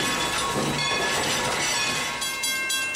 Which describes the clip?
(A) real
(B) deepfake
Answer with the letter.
A